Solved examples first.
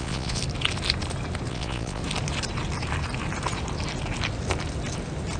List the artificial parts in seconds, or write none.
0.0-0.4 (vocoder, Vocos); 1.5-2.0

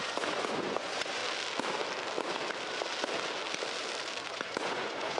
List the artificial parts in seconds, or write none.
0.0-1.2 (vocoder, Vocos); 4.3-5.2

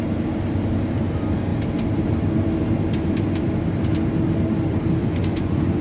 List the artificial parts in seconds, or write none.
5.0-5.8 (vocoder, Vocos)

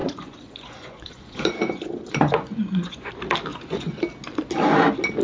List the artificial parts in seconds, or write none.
0.0-3.1 (vocoder, Vocos); 3.5-4.0

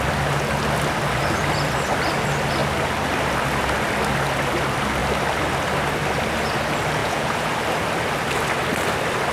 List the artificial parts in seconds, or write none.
7.0-7.5 (vocoder, Vocos)